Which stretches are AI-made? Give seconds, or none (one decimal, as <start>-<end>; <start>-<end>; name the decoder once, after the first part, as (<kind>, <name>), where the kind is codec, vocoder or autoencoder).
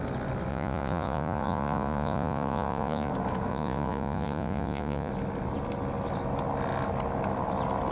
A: 0.5-3.1 (vocoder, Vocos); 3.5-5.1